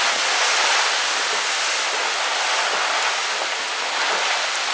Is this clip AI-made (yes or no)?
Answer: no